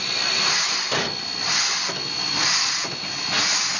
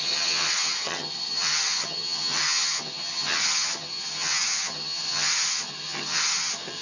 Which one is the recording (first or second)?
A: first